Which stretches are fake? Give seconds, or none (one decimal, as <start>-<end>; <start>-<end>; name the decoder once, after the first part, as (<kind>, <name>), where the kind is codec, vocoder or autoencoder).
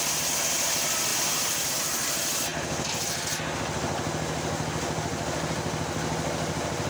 none